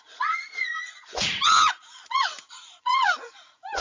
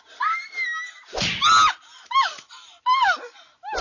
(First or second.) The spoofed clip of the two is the first